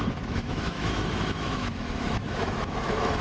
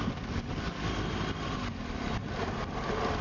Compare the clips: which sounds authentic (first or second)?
second